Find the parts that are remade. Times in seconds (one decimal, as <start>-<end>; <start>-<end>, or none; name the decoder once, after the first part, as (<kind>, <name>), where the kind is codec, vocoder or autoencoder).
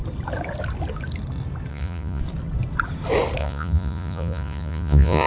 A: 1.7-2.2 (vocoder, Vocos); 3.4-5.3